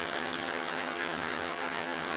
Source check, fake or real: fake